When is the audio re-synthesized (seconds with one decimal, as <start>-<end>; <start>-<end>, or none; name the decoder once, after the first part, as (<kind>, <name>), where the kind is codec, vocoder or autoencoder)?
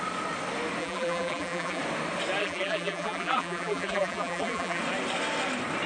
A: 0.8-1.8 (vocoder, BigVGAN v2); 2.4-4.8